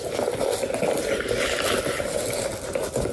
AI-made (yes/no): no